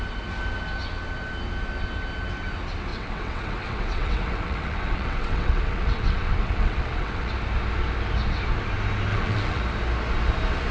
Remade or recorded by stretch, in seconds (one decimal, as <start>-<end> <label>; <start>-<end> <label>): 0.0-2.9 recorded; 2.9-7.3 remade; 7.3-9.1 recorded; 9.1-9.6 remade; 9.6-10.7 recorded